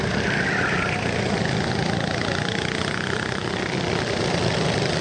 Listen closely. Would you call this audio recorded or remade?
recorded